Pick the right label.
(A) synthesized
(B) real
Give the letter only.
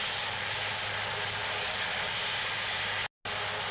B